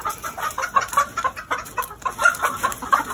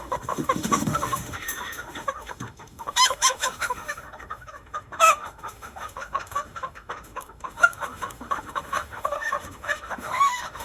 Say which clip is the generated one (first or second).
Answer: second